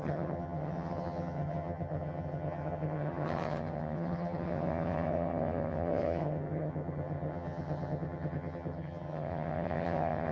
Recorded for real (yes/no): no